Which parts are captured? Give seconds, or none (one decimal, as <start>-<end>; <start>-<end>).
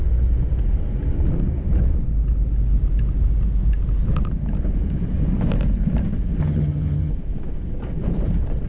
0.0-6.4; 7.1-8.7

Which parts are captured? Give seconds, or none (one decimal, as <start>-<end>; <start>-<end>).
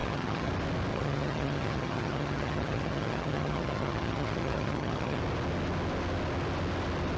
0.5-0.9; 5.2-7.2